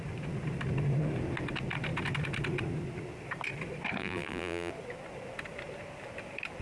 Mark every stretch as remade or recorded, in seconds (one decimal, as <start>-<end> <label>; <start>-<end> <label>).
0.0-4.0 recorded; 4.0-4.7 remade; 4.7-6.6 recorded